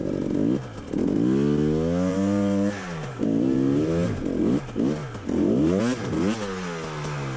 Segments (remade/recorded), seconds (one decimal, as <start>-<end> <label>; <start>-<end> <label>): 0.0-2.1 recorded; 2.1-3.9 remade; 3.9-5.0 recorded; 5.0-5.8 remade; 5.8-7.4 recorded